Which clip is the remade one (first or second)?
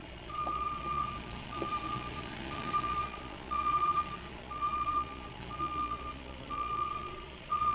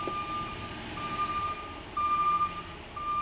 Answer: first